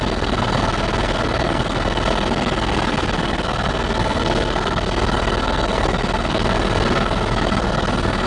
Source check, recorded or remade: remade